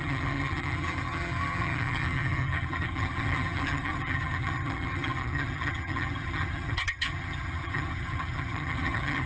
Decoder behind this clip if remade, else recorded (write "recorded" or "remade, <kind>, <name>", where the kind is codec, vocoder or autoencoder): remade, vocoder, HiFi-GAN